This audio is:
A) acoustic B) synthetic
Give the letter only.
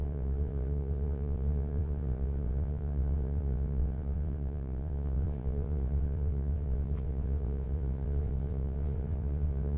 B